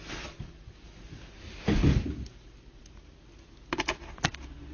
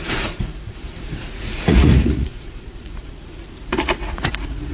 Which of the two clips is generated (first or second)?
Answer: second